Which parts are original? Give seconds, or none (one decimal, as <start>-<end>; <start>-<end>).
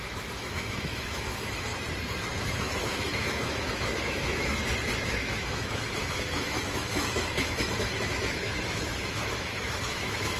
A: 1.7-2.4; 4.6-5.1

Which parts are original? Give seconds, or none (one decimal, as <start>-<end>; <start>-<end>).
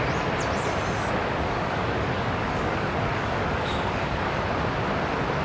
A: 0.0-1.2; 4.4-5.4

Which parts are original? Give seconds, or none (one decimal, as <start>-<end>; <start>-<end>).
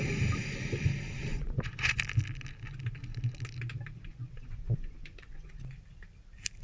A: 0.0-1.3; 2.0-4.1; 5.5-6.6